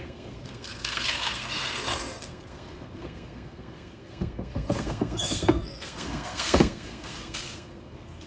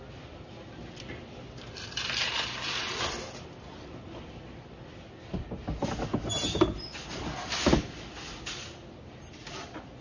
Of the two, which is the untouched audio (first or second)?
second